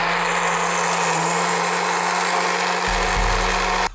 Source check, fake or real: real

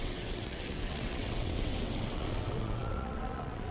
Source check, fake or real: fake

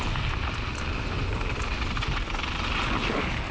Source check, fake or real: real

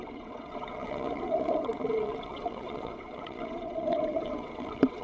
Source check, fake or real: fake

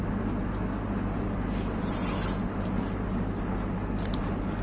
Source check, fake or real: real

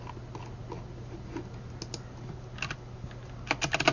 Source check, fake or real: real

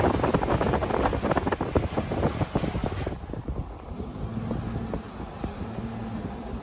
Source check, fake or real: real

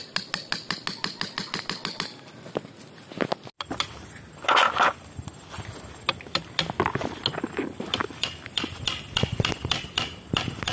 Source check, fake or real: real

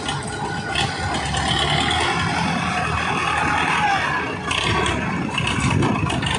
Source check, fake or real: real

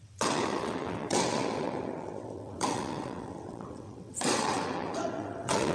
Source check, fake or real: fake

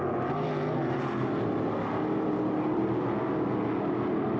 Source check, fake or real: real